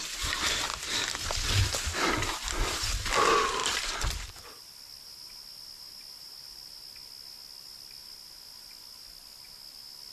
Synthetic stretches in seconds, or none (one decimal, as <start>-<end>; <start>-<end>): 3.6-4.3